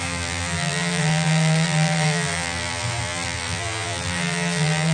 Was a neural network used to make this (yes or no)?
yes